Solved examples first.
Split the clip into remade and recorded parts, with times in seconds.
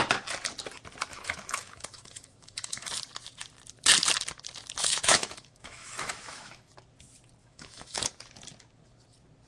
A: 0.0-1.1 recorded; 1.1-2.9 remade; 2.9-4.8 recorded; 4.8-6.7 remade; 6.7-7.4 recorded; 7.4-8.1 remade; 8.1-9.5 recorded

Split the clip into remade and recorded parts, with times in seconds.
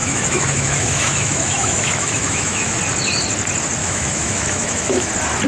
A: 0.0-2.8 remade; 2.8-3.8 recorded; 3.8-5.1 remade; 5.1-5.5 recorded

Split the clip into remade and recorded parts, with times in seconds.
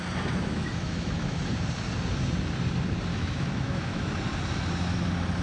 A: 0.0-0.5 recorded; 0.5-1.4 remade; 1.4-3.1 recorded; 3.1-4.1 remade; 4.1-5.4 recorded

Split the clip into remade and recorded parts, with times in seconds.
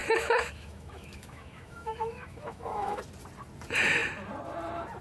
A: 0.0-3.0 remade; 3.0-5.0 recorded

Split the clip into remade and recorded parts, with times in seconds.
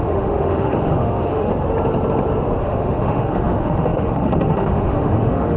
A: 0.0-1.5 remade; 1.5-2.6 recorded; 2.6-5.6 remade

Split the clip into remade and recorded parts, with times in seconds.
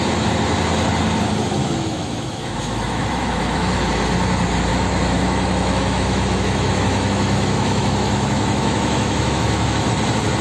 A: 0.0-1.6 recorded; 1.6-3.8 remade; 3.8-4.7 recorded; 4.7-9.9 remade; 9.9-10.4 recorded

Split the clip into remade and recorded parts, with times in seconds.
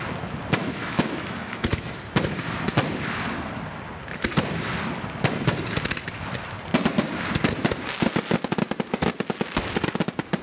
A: 0.0-0.6 recorded; 0.6-2.0 remade; 2.0-10.4 recorded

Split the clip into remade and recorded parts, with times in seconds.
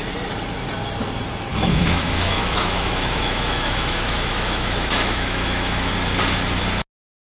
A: 0.0-1.5 recorded; 1.5-5.9 remade; 5.9-7.3 recorded